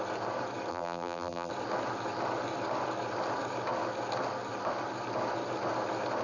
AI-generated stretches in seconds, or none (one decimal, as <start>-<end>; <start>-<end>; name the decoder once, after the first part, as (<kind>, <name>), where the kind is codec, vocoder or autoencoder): 0.7-1.5 (vocoder, BigVGAN v2)